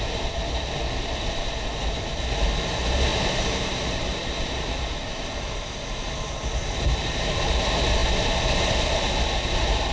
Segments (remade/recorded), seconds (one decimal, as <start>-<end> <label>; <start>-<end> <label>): 0.0-3.1 recorded; 3.1-7.4 remade; 7.4-9.9 recorded